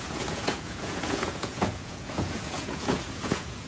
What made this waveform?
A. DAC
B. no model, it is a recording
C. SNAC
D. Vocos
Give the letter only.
D